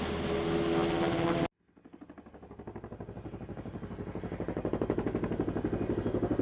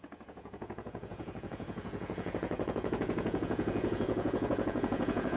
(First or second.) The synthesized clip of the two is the second